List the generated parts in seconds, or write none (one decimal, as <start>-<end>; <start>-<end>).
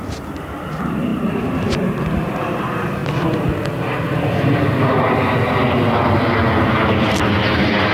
none